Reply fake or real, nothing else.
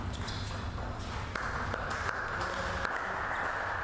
real